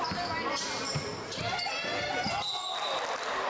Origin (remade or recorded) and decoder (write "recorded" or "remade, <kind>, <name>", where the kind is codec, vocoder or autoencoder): recorded